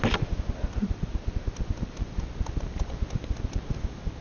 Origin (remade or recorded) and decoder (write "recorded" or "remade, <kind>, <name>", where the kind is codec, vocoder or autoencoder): recorded